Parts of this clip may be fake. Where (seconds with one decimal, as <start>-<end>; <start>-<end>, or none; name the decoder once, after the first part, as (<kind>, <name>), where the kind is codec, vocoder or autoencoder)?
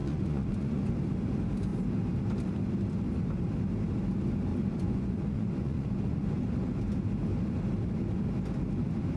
0.0-0.9 (vocoder, Vocos); 4.5-6.4